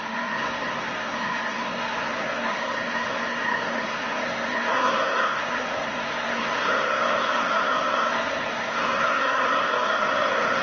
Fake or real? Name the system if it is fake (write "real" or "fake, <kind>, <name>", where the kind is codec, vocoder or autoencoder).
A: fake, codec, SNAC